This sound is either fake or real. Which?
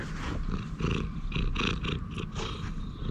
real